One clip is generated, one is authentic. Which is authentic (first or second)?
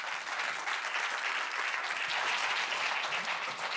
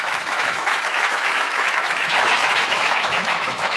first